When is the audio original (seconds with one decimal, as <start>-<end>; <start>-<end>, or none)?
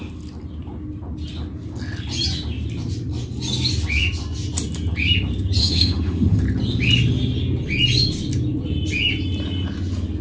0.0-5.6; 6.4-10.2